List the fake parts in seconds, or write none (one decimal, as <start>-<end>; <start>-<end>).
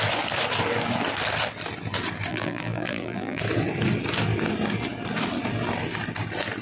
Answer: 2.3-3.4